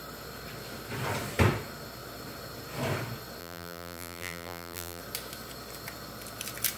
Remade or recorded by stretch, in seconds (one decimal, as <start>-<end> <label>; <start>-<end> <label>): 0.0-3.4 recorded; 3.4-5.0 remade; 5.0-6.8 recorded